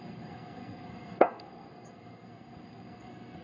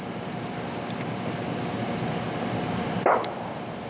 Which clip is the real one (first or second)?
second